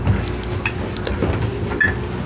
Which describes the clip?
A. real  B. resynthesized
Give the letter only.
A